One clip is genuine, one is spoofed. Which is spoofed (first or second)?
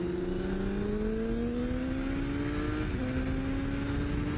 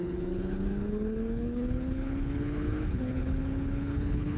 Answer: second